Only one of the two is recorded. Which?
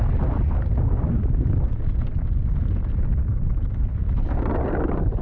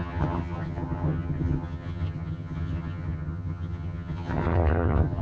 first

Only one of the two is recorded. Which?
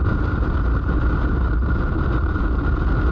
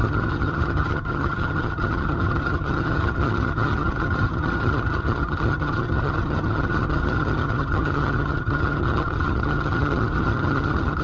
first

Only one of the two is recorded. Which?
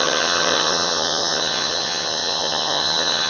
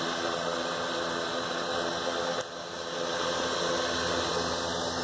second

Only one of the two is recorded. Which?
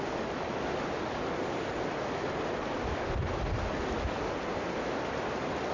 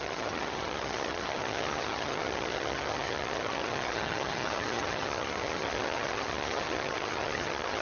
first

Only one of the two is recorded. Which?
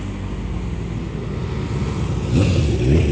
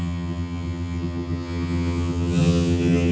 first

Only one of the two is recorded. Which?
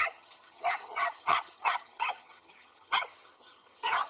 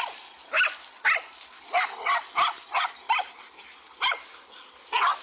second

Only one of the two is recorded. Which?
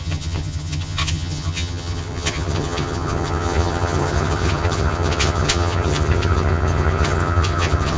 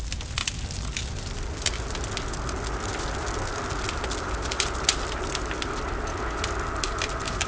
second